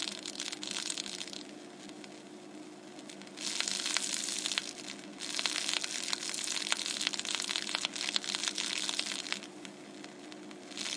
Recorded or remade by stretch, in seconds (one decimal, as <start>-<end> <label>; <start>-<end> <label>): 0.0-11.0 recorded